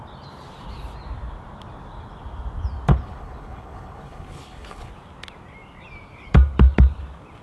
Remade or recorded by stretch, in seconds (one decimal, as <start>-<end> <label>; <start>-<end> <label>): 0.0-2.9 recorded; 2.9-4.9 remade; 4.9-7.4 recorded